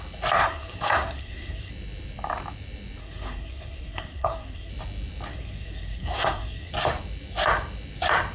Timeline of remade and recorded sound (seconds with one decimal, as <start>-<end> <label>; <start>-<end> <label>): 0.0-0.4 recorded; 0.4-1.7 remade; 1.7-3.0 recorded; 3.0-4.7 remade; 4.7-5.3 recorded; 5.3-6.7 remade; 6.7-8.3 recorded